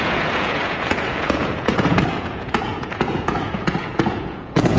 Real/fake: fake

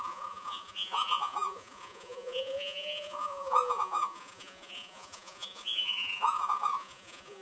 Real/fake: fake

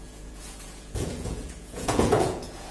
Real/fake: fake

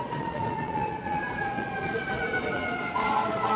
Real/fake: fake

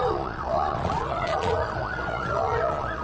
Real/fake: fake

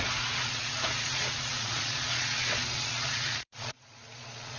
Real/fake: fake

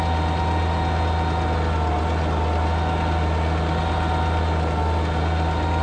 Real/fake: real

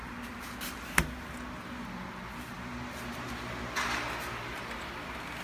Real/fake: real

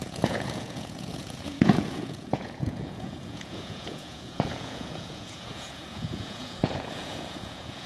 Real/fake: fake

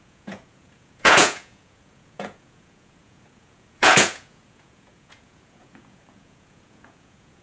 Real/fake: fake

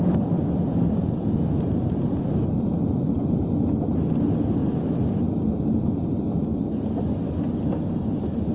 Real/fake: real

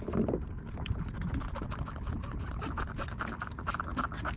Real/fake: real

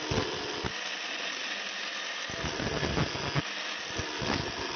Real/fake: real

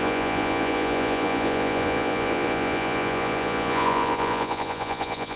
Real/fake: fake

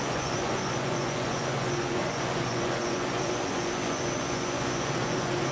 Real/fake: fake